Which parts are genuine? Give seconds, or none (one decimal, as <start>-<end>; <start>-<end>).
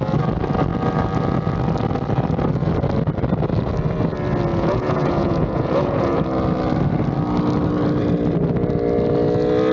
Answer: 0.0-4.5; 6.2-9.7